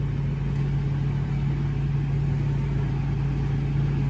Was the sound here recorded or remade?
recorded